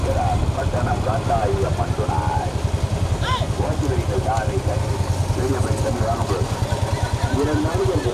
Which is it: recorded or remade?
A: recorded